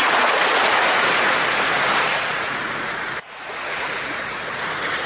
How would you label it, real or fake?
fake